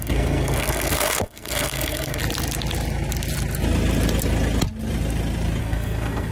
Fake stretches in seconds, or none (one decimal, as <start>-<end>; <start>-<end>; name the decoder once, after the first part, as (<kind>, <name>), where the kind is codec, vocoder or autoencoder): 0.0-2.2 (codec, SNAC); 5.6-6.3